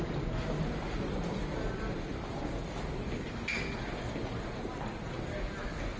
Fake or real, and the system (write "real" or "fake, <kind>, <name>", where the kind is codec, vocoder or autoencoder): real